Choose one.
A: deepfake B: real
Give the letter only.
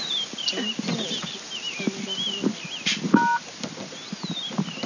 B